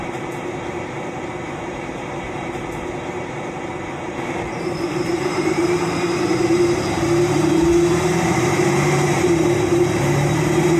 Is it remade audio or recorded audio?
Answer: remade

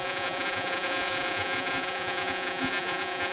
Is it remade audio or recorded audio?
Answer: remade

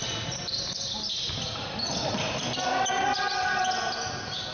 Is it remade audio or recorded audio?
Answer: recorded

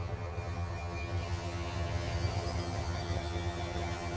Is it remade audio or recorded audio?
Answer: remade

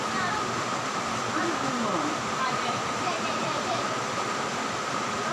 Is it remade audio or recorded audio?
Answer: recorded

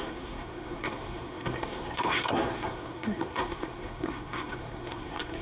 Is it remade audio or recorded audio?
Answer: remade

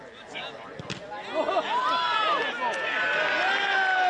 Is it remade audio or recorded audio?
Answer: recorded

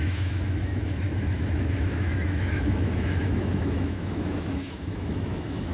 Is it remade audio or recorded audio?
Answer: remade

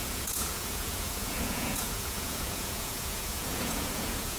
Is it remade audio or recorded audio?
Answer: remade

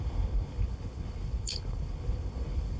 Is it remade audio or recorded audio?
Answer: remade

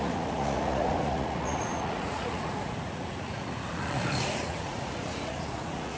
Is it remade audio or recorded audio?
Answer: remade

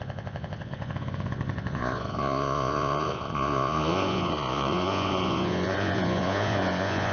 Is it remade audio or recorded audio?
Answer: remade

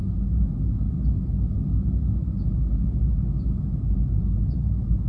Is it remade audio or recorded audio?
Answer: recorded